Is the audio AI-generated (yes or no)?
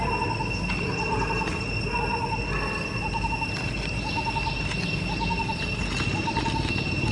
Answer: no